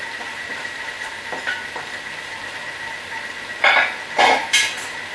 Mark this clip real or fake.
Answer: real